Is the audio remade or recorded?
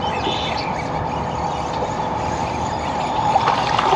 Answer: recorded